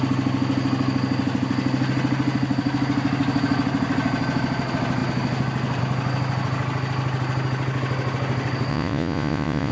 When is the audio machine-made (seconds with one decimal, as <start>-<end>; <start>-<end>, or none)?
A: 8.7-9.7